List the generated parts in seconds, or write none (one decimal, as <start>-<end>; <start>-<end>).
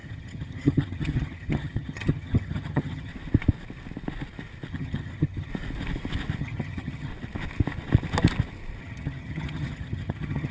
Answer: 0.0-3.1; 4.7-5.5; 6.4-7.1; 8.8-10.5